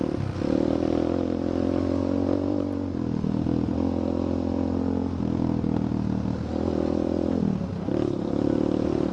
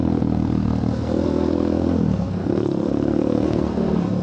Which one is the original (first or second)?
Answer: first